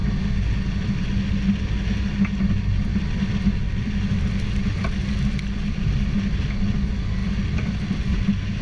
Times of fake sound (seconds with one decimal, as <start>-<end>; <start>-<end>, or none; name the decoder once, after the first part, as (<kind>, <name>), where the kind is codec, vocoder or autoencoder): 2.9-6.4 (vocoder, BigVGAN v2); 7.2-8.6